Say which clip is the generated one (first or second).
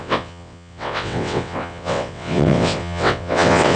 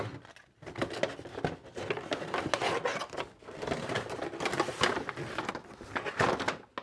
first